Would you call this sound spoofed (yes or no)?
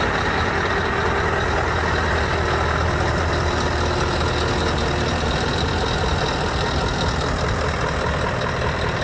no